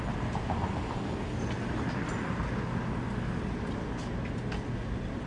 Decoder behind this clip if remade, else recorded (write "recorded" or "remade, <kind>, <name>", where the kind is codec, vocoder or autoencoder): recorded